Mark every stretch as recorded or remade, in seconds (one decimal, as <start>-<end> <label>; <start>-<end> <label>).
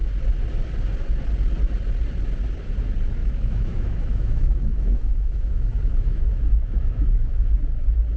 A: 0.0-3.2 recorded; 3.2-7.5 remade; 7.5-8.2 recorded